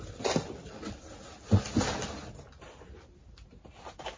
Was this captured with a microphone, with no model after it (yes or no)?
yes